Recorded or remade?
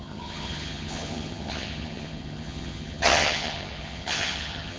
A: remade